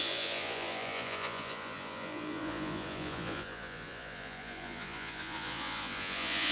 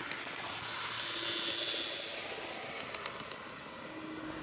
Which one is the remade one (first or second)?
first